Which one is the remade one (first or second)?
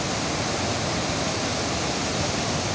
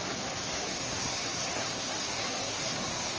second